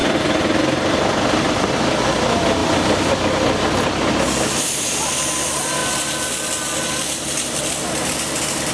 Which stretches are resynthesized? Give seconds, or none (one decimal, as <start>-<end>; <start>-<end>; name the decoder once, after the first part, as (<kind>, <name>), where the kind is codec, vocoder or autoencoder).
0.0-1.7 (vocoder, BigVGAN v2); 2.6-3.1